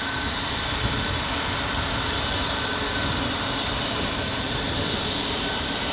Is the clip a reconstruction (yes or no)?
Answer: no